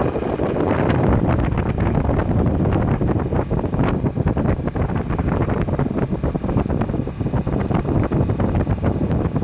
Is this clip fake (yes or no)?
no